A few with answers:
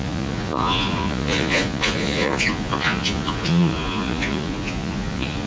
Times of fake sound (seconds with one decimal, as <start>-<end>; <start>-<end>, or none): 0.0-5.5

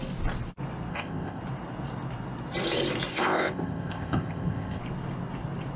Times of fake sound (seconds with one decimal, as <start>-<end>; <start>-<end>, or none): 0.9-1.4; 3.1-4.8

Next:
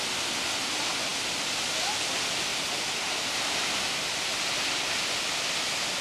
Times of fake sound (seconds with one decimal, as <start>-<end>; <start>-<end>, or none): none

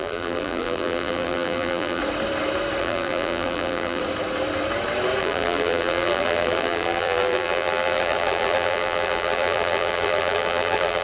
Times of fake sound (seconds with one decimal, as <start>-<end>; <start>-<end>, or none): 0.0-2.0; 2.8-4.0; 5.2-11.0

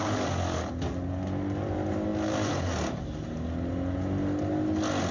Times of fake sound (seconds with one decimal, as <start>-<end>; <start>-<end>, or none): none

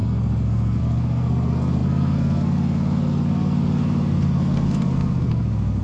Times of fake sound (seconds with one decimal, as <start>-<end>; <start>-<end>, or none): 0.0-5.8

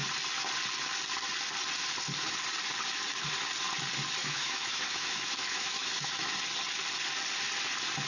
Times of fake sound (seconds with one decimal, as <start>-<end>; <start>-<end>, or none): 4.2-6.3

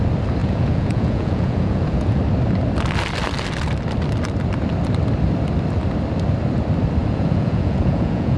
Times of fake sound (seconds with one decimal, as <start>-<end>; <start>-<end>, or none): 0.4-2.2; 7.0-8.4